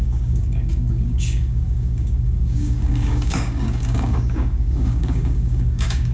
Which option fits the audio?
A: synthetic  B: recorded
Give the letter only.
A